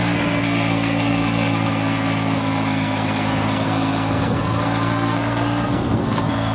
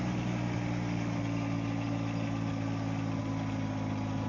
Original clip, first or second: second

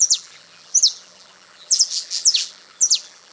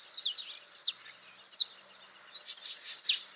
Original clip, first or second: second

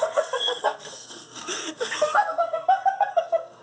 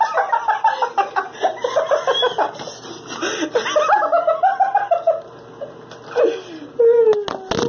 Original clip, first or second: second